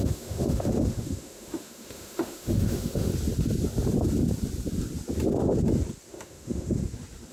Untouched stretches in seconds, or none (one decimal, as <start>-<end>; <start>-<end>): 3.1-6.1; 6.8-7.3